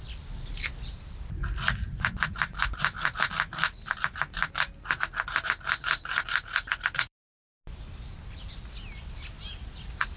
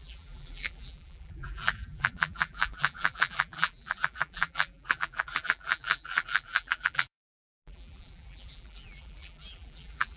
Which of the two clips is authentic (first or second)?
first